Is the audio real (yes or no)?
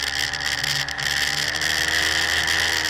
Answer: yes